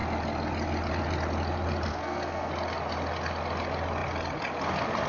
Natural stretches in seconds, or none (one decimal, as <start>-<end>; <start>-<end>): 0.0-1.9; 2.5-5.1